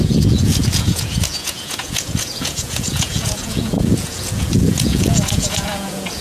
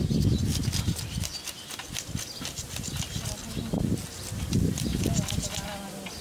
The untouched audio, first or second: second